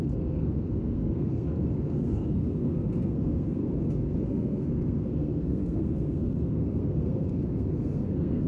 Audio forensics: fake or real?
fake